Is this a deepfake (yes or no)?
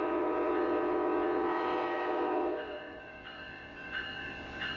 yes